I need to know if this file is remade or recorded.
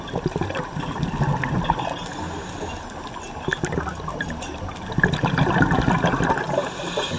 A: recorded